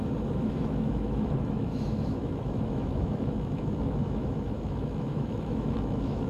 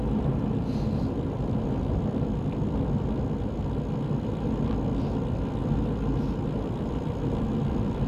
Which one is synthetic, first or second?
first